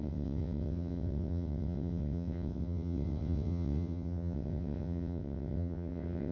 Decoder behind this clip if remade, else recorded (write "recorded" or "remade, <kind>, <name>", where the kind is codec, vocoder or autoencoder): remade, vocoder, WaveNeXt